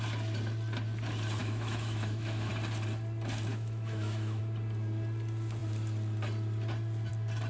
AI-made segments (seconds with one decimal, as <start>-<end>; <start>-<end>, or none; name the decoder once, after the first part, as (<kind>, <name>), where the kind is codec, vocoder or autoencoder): 1.4-2.5 (autoencoder, DAC-VAE); 3.5-4.4